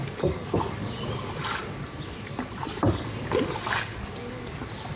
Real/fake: real